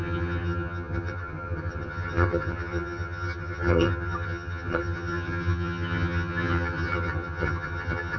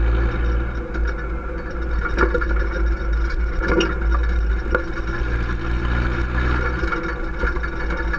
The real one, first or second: second